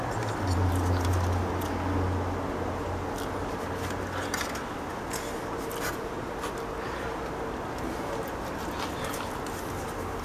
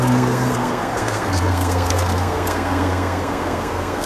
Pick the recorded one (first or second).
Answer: first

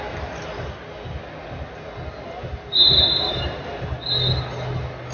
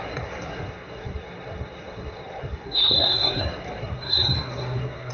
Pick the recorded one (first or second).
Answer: first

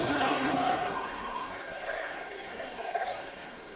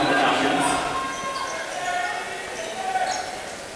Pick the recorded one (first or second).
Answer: second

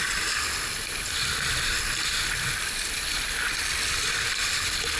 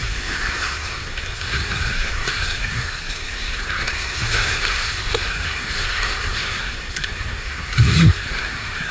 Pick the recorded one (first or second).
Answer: first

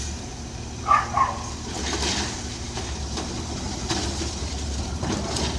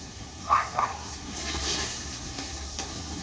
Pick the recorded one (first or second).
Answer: first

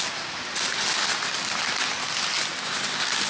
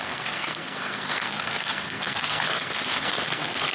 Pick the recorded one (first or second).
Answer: first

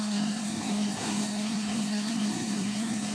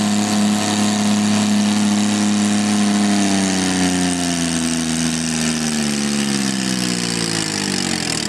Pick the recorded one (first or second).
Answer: second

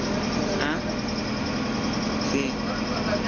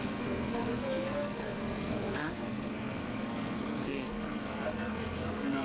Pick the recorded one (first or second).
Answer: first